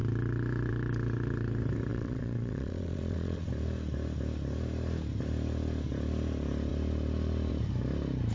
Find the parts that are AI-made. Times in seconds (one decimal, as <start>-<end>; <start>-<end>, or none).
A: 1.9-3.5